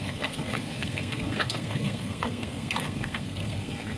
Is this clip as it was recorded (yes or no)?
no